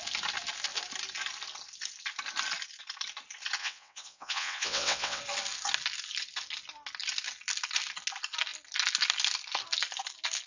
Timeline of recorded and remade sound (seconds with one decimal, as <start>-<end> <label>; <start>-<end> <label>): 0.0-3.6 recorded; 3.6-5.2 remade; 5.2-10.5 recorded